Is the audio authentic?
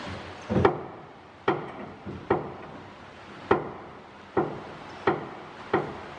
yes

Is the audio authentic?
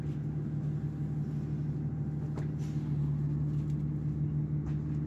yes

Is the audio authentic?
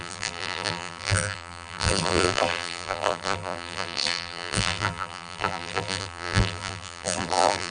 no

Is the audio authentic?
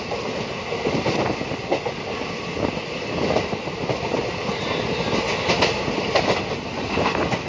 yes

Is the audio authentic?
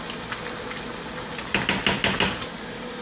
yes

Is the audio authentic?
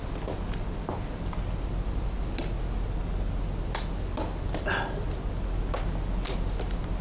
yes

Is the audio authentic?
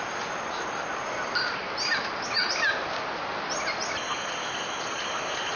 yes